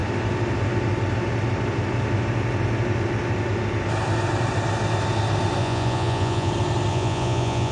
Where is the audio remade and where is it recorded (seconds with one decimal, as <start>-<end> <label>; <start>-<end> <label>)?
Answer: 0.0-5.6 recorded; 5.6-6.5 remade; 6.5-6.9 recorded; 6.9-7.7 remade